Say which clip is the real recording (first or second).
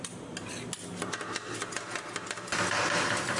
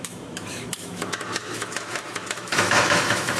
first